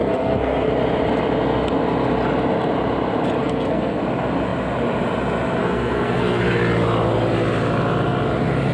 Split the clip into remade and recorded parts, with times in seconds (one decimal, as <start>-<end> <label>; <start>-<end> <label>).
0.0-0.7 remade; 0.7-3.4 recorded; 3.4-4.0 remade; 4.0-5.6 recorded; 5.6-6.4 remade; 6.4-8.7 recorded